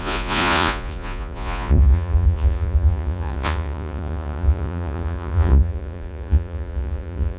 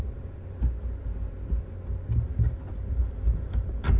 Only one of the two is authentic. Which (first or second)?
second